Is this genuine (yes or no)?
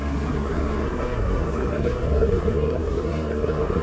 no